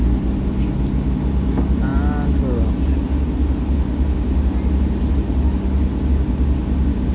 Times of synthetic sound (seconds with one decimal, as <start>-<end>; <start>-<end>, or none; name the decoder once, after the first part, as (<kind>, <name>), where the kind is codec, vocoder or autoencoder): none